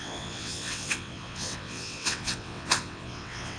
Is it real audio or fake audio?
fake